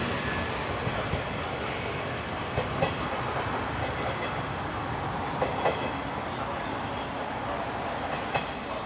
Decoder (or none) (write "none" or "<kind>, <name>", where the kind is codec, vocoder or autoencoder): none